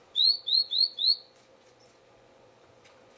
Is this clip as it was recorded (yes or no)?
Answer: no